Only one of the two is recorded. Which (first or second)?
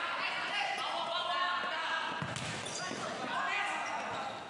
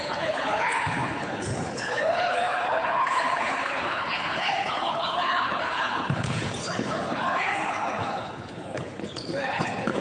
first